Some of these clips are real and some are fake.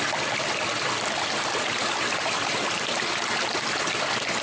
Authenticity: real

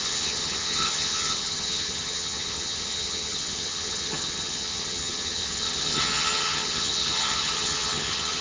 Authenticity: fake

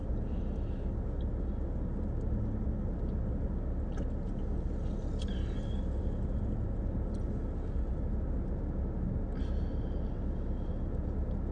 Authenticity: real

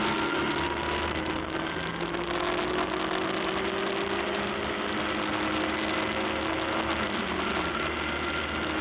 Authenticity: real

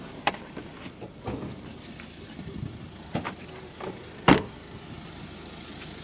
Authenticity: fake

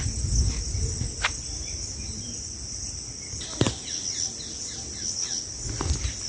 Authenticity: real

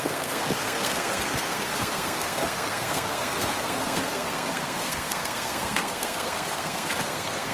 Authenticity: fake